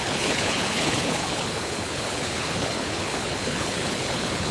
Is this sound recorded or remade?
remade